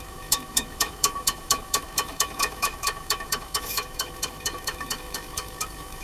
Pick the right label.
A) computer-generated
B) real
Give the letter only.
A